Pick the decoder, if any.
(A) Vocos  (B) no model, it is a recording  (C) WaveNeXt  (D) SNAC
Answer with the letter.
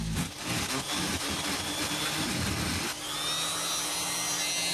B